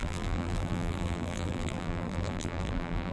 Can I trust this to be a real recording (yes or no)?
no